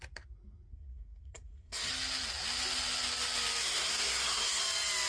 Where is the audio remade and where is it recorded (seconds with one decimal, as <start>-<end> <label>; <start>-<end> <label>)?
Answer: 0.0-0.7 recorded; 0.7-1.9 remade; 1.9-3.6 recorded; 3.6-4.6 remade; 4.6-5.1 recorded